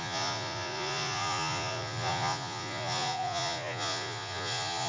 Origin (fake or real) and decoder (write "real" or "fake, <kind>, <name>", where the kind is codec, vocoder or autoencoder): fake, vocoder, Vocos